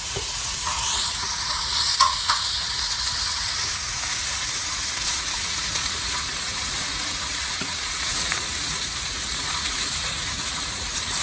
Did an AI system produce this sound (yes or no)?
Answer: yes